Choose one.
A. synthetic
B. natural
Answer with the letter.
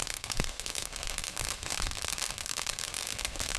A